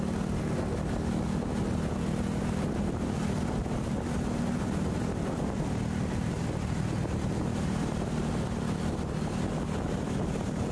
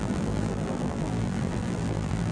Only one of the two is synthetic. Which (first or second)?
second